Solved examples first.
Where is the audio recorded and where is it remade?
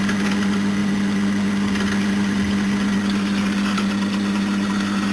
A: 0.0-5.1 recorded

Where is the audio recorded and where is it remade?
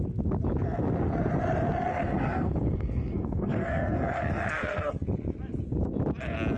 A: 0.0-1.9 recorded; 1.9-4.8 remade; 4.8-6.6 recorded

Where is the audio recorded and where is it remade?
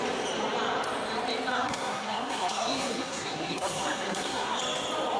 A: 0.0-1.5 recorded; 1.5-4.6 remade; 4.6-5.2 recorded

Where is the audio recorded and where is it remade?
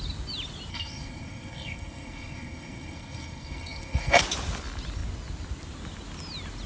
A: 0.0-0.7 recorded; 0.7-4.2 remade; 4.2-6.7 recorded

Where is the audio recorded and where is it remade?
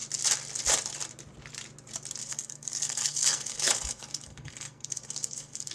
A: 0.0-2.2 recorded; 2.2-5.7 remade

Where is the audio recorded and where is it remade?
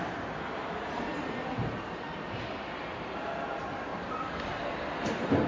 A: 0.0-5.5 recorded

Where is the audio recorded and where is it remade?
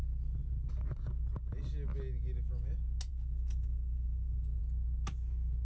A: 0.0-3.1 recorded; 3.1-4.6 remade; 4.6-5.6 recorded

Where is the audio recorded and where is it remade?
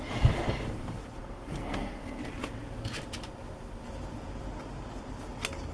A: 0.0-1.2 recorded; 1.2-2.2 remade; 2.2-5.7 recorded